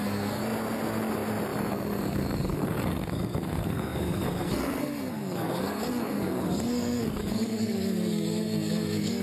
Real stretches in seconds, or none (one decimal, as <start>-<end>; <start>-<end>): 0.4-1.7